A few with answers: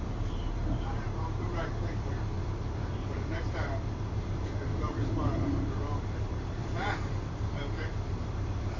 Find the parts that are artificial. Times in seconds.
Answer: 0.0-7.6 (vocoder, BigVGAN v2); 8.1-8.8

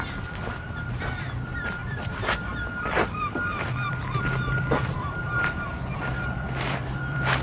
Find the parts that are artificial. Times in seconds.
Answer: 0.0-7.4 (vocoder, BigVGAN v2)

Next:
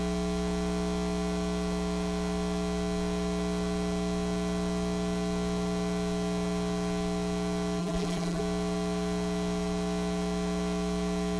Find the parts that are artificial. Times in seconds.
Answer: 7.8-8.4 (vocoder, BigVGAN v2)

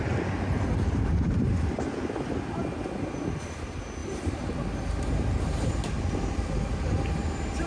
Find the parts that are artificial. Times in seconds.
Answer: 4.0-4.5 (vocoder, BigVGAN v2)